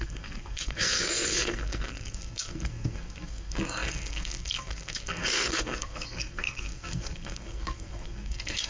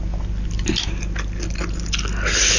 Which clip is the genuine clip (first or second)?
second